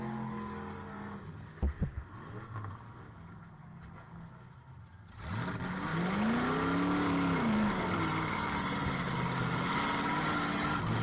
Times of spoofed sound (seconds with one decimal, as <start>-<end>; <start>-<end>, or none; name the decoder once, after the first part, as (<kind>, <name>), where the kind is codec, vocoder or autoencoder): none